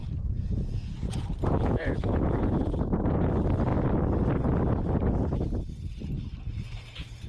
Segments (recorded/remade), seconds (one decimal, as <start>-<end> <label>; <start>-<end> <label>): 0.0-3.3 remade; 3.3-7.3 recorded